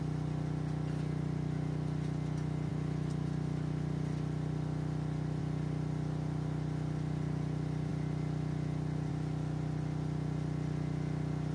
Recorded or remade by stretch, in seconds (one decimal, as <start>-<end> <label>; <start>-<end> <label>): 0.0-11.5 recorded